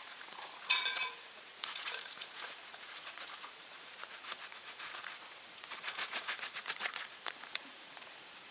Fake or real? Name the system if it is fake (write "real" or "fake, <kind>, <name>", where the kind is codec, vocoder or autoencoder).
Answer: fake, vocoder, Vocos